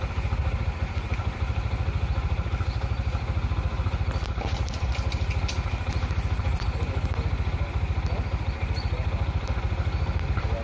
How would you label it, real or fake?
real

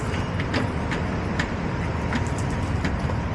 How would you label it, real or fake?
real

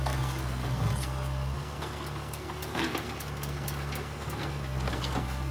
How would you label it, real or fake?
fake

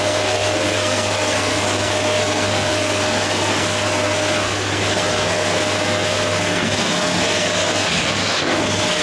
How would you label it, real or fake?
fake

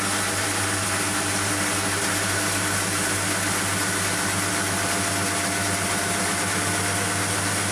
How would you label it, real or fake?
real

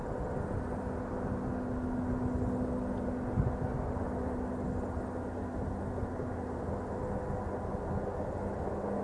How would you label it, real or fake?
real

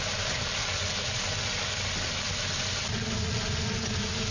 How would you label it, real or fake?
real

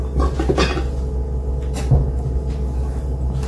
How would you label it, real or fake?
real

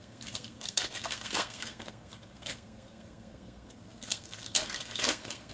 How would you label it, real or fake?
fake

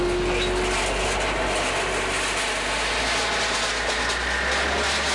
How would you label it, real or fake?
real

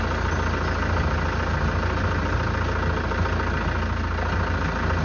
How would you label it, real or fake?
real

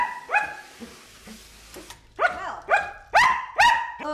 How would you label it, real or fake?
real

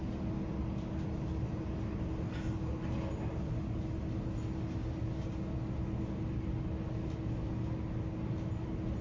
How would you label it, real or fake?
real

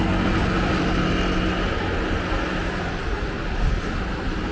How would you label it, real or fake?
real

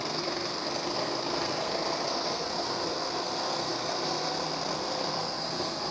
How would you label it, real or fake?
fake